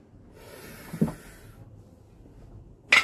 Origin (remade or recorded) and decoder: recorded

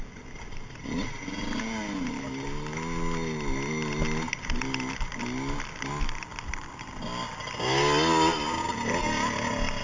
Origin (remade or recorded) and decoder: recorded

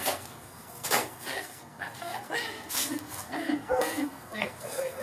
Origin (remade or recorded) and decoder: remade, codec, SNAC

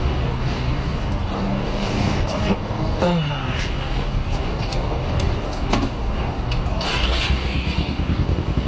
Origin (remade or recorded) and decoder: remade, codec, DAC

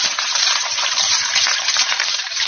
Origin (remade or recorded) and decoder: remade, vocoder, BigVGAN v2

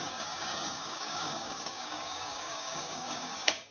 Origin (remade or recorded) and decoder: remade, codec, DAC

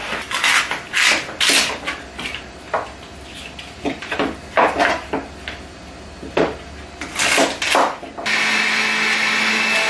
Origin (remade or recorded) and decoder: recorded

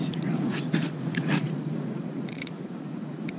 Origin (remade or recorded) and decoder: remade, vocoder, Vocos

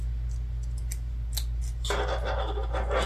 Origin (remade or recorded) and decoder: recorded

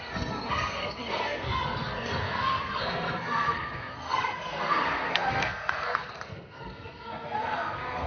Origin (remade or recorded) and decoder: remade, codec, SNAC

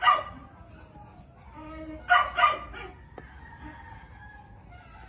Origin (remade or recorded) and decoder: recorded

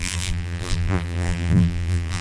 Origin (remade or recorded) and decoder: remade, vocoder, BigVGAN v2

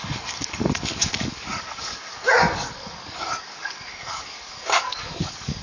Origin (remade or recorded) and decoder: remade, codec, DAC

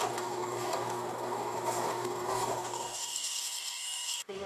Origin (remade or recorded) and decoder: remade, codec, DAC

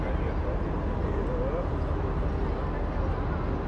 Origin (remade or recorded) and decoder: recorded